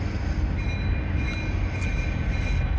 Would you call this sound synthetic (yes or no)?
no